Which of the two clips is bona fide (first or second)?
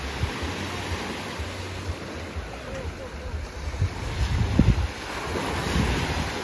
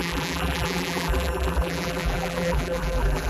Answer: first